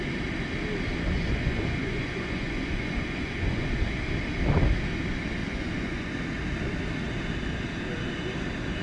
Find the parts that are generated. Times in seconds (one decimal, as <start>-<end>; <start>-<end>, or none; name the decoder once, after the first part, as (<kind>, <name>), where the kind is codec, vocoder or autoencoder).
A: 1.1-3.7 (vocoder, Vocos); 5.4-6.1